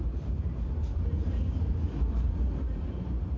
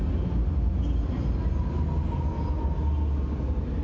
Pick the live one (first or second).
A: second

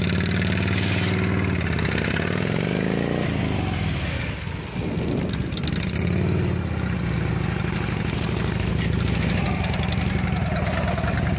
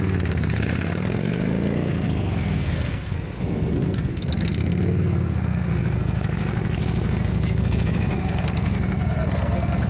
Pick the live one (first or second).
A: first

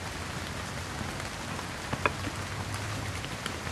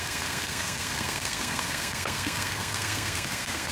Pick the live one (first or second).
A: first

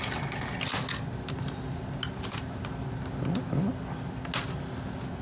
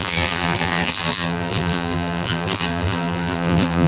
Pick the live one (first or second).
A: first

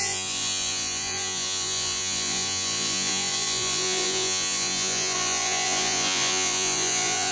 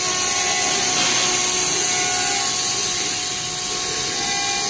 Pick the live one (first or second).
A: second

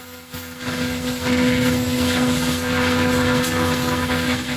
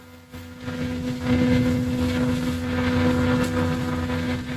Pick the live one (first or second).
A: second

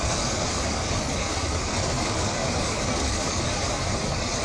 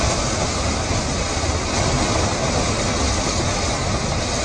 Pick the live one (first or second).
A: second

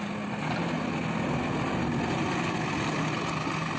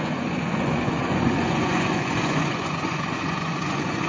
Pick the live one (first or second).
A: first